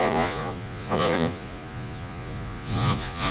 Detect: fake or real fake